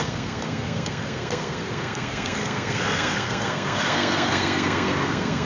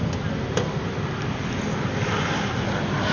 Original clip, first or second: second